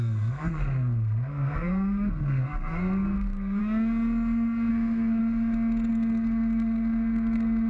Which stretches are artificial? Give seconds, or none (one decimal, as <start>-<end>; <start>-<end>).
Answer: 0.0-3.6; 4.7-5.2; 5.9-7.7